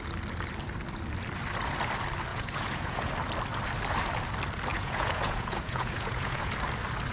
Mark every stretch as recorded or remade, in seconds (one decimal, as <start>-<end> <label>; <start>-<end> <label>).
0.0-2.3 recorded; 2.3-3.1 remade; 3.1-4.7 recorded; 4.7-6.5 remade; 6.5-7.1 recorded